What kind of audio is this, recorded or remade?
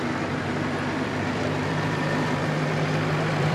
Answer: remade